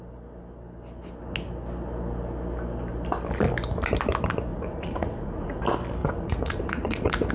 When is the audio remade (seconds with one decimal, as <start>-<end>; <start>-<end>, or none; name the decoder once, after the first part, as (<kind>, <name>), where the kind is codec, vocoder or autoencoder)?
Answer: 4.5-5.6 (vocoder, Vocos); 6.0-7.3